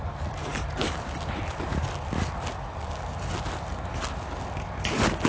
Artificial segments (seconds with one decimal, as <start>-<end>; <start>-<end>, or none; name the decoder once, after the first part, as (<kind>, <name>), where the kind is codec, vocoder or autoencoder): none